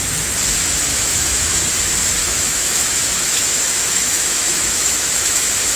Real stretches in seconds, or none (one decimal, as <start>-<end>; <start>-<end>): 0.0-0.9; 1.5-2.2